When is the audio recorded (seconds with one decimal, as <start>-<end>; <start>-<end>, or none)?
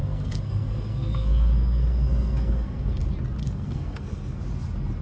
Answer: 3.0-3.4; 4.4-5.0